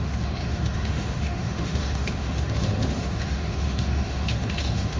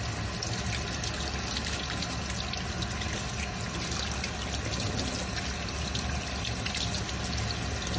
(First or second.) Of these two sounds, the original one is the second